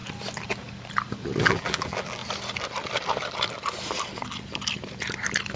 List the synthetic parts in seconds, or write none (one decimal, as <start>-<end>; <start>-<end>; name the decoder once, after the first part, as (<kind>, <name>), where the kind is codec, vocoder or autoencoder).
1.4-2.2 (vocoder, BigVGAN v2)